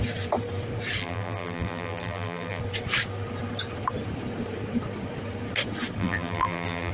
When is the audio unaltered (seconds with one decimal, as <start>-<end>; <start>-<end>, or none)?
0.0-1.0; 2.6-6.0